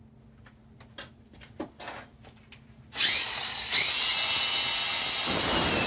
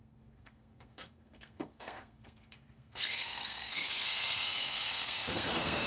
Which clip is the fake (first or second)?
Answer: second